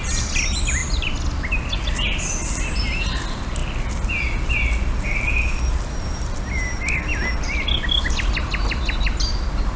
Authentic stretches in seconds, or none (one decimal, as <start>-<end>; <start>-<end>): 0.0-9.8